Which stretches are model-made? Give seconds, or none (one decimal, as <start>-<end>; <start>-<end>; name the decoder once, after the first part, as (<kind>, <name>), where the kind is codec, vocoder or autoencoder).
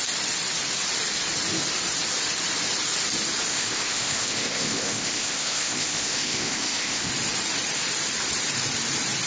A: 3.5-7.1 (codec, ZipCodec)